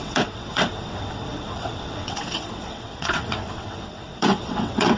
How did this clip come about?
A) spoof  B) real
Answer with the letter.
A